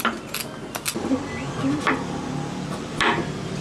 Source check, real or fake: real